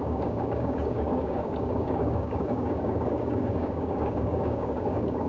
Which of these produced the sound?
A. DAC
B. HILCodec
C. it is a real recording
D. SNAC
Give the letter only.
A